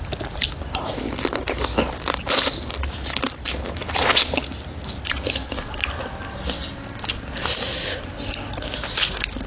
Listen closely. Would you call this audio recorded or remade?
recorded